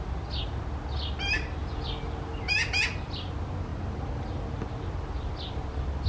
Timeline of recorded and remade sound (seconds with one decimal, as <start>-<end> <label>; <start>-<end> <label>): 0.0-6.1 recorded